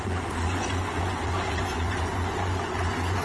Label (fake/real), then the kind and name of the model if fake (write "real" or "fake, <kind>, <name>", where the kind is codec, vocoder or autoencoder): fake, vocoder, Vocos